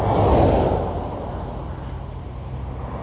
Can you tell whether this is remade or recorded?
recorded